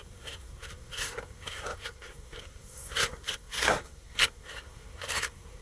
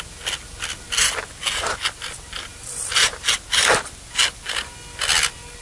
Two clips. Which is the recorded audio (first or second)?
second